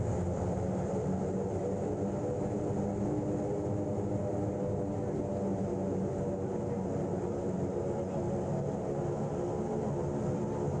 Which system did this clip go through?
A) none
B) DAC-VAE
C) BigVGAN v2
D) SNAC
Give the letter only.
A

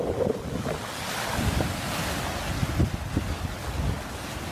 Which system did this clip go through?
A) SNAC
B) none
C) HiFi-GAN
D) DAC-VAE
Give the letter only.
B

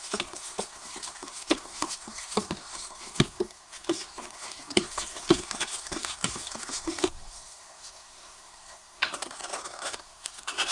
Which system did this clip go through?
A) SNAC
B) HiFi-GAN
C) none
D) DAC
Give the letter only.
A